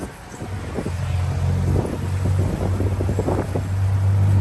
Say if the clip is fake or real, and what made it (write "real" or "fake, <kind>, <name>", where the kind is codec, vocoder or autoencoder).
real